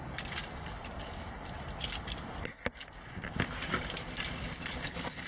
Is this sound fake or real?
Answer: real